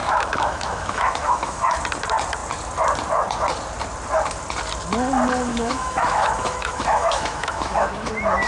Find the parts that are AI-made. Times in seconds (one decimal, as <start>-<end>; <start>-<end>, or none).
0.0-1.8; 5.5-8.1